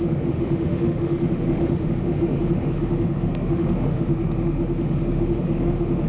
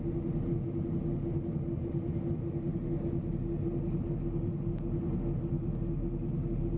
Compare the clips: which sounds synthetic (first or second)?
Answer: first